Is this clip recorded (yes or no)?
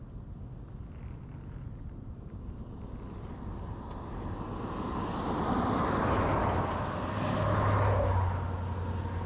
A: yes